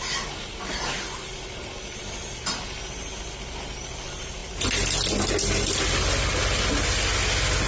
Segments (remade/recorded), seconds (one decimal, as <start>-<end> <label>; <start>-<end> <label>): 0.0-7.7 recorded